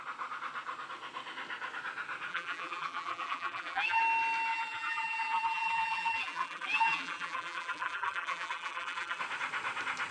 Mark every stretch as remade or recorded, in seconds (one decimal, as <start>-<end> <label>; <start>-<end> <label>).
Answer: 0.0-2.3 recorded; 2.3-4.0 remade; 4.0-4.5 recorded; 4.5-9.2 remade; 9.2-10.1 recorded